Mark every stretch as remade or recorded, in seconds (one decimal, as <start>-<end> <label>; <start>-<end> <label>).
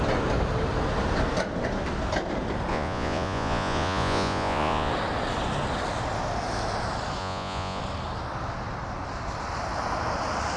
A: 0.0-2.7 recorded; 2.7-4.9 remade; 4.9-7.2 recorded; 7.2-7.8 remade; 7.8-10.6 recorded